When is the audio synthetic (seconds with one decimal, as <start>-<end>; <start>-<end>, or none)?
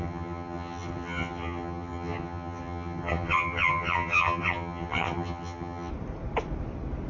0.0-5.9